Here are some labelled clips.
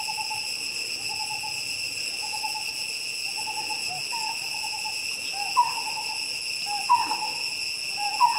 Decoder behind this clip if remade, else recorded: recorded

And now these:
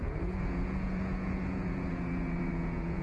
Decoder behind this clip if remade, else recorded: remade, vocoder, Vocos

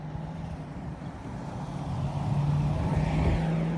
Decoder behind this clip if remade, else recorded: recorded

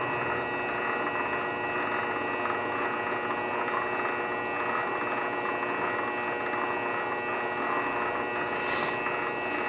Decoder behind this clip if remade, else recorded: recorded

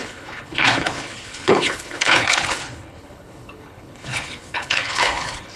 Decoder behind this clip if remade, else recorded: remade, codec, HILCodec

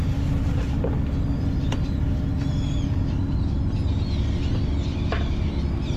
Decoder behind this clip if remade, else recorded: recorded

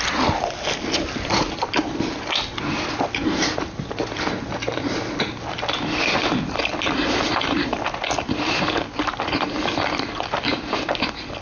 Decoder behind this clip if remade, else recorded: remade, vocoder, BigVGAN v2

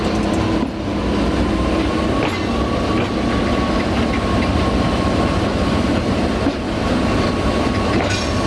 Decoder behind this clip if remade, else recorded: recorded